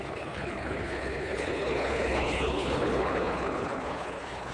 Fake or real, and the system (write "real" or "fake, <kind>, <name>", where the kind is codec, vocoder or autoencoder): fake, codec, HILCodec